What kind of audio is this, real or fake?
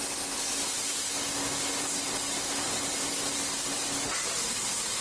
real